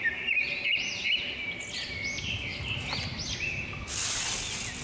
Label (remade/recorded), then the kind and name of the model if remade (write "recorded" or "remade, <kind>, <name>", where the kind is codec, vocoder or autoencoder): recorded